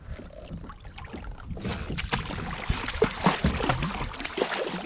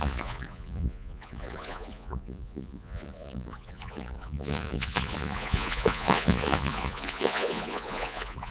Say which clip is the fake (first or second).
second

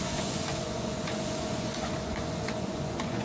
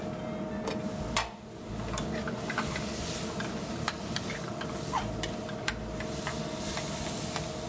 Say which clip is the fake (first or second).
first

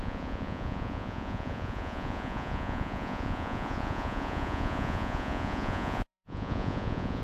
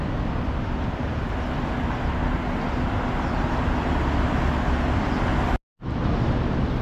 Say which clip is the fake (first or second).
first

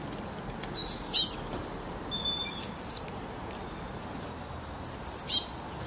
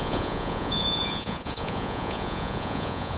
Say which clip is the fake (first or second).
second